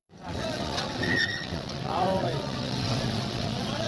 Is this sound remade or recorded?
remade